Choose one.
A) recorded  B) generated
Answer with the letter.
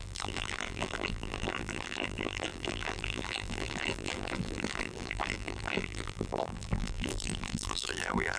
B